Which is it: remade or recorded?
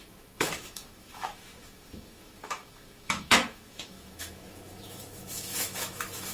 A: remade